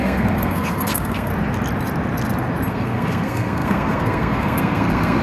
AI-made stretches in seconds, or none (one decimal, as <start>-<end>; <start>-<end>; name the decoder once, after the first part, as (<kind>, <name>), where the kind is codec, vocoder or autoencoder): 0.0-1.3 (codec, SNAC); 2.7-5.2